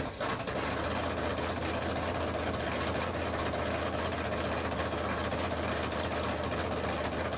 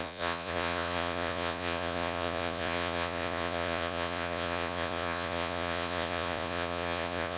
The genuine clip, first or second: first